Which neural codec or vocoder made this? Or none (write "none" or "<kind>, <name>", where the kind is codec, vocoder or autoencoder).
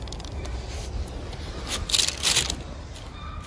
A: none